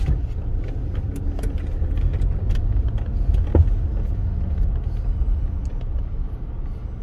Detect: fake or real real